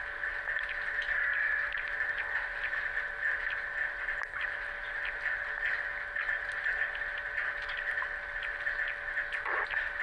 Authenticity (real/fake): real